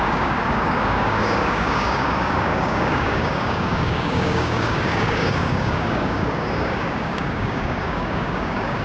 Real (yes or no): no